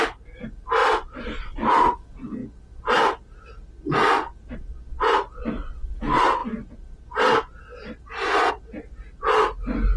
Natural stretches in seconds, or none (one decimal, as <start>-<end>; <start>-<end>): 0.0-0.8; 1.4-10.0